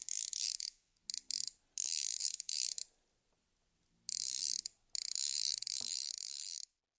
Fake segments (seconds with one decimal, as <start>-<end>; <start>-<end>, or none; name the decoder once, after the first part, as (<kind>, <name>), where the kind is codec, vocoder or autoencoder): 0.0-1.0 (autoencoder, DAC-VAE); 2.2-2.8